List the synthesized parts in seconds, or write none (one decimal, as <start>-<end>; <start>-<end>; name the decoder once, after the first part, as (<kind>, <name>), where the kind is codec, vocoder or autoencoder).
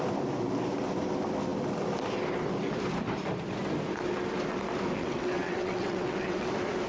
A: 5.0-6.5 (vocoder, WaveNeXt)